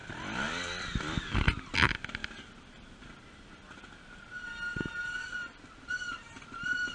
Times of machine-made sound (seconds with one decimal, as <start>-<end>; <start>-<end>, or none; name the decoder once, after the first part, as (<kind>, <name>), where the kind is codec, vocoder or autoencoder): none